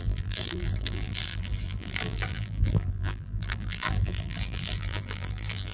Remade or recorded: remade